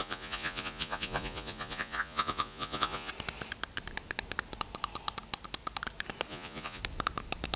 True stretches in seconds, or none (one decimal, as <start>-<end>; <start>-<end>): 3.1-6.3; 6.8-7.6